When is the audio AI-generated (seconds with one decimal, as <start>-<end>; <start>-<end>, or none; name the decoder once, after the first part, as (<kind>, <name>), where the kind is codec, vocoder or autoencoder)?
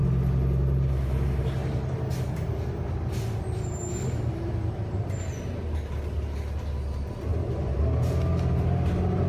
7.3-7.8 (vocoder, BigVGAN v2)